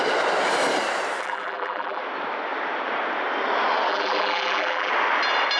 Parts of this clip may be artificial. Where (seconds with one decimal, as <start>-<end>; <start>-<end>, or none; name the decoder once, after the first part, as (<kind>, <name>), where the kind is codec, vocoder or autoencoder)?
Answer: 1.2-2.0 (vocoder, BigVGAN v2); 3.9-4.9